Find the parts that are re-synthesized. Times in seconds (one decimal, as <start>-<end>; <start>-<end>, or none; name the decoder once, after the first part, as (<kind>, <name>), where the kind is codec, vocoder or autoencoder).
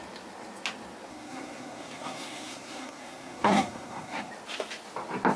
1.1-4.3 (codec, SNAC)